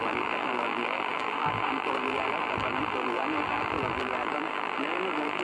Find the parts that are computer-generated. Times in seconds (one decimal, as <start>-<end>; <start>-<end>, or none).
0.0-5.4